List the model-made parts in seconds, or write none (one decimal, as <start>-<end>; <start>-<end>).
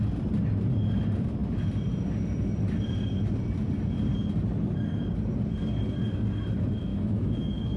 6.9-7.8